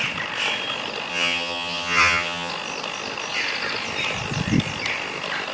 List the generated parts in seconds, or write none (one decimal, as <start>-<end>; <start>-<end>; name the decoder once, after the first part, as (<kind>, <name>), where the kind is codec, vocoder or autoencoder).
1.1-2.5 (vocoder, HiFi-GAN)